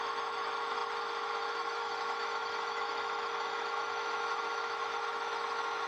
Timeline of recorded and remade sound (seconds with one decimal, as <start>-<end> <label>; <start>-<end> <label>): 0.0-5.9 remade